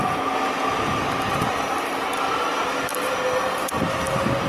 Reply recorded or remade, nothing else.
recorded